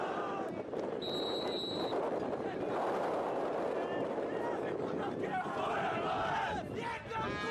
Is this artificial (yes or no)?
no